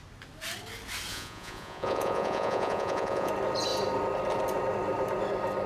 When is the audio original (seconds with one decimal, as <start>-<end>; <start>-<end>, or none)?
0.0-1.1; 3.3-5.7